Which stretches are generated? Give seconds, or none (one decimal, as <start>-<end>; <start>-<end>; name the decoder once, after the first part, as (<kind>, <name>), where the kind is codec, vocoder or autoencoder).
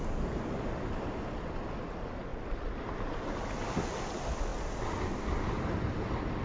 none